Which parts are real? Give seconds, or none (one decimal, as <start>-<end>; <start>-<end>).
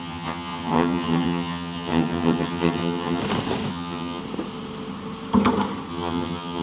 3.2-3.7; 4.2-5.9